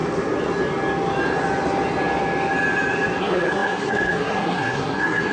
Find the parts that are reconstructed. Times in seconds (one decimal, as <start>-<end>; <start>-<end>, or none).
3.2-5.3